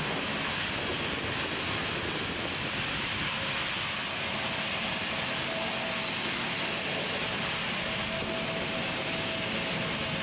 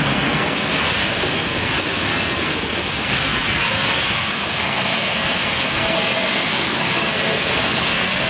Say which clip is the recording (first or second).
first